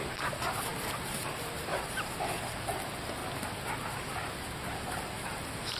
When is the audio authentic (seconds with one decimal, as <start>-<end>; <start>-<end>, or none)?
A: 1.7-2.4; 3.2-4.3